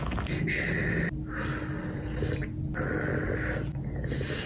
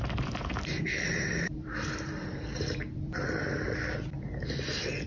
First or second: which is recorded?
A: first